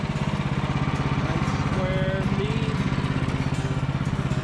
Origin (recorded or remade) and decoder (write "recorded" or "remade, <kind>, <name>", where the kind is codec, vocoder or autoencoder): recorded